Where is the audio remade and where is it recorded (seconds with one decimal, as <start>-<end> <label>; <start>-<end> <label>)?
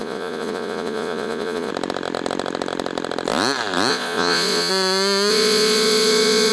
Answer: 0.0-1.7 remade; 1.7-3.9 recorded; 3.9-4.7 remade; 4.7-5.3 recorded; 5.3-6.5 remade